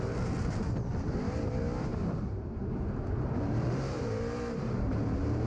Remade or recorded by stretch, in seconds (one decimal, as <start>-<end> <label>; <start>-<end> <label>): 0.0-1.9 recorded; 1.9-5.5 remade